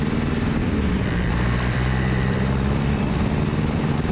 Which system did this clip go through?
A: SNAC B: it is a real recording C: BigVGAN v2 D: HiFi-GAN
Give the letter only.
C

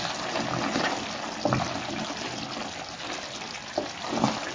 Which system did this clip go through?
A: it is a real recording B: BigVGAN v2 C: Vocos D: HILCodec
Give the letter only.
A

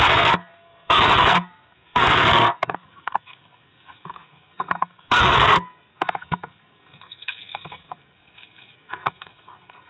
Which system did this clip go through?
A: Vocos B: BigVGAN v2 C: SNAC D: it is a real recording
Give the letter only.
C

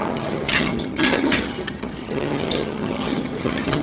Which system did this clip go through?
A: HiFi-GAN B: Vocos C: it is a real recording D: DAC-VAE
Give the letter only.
A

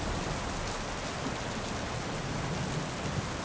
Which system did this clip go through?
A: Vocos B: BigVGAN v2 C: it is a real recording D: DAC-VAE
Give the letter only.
C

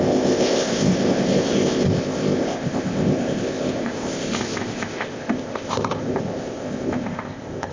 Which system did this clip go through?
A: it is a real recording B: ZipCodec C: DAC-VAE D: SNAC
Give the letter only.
B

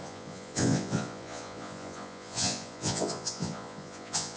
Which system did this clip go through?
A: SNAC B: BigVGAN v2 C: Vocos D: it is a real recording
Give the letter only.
C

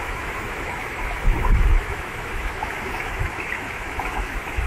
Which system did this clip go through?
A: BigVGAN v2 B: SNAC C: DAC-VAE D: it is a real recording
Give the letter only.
C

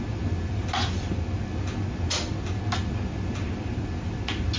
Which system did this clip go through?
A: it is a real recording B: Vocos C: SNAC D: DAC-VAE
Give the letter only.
A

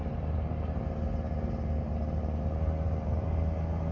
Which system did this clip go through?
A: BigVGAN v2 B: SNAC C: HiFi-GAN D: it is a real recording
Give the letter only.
D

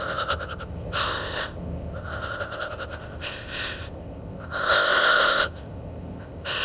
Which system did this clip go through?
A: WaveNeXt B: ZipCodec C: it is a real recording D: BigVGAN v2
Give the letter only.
B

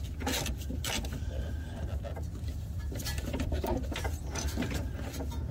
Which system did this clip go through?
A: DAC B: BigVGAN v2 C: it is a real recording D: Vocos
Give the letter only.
C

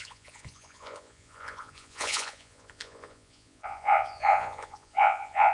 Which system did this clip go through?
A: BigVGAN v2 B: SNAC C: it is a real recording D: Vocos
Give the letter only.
D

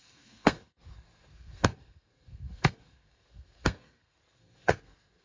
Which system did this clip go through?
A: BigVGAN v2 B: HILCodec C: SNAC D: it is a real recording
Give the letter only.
C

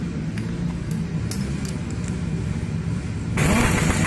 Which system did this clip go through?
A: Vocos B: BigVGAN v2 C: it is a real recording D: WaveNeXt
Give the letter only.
C